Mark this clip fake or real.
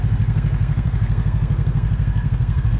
fake